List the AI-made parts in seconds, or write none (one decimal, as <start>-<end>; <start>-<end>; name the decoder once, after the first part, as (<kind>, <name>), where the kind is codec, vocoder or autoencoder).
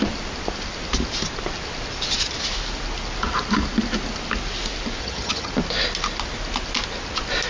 5.0-5.5 (vocoder, HiFi-GAN)